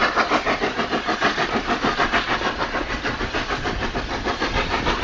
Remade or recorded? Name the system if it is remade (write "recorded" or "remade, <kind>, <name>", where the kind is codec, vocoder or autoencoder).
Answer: remade, vocoder, BigVGAN v2